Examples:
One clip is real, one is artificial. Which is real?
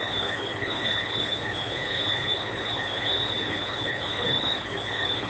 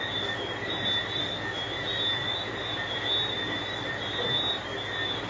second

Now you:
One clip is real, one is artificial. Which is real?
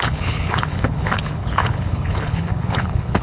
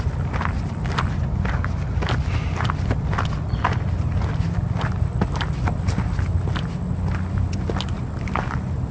second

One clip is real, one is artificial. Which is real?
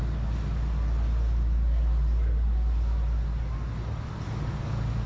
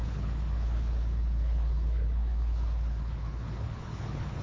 first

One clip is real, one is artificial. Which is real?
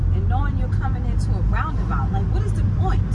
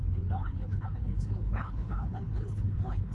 first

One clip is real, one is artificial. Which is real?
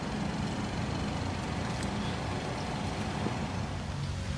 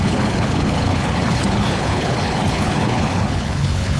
first